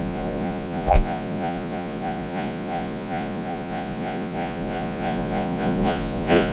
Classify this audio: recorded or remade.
remade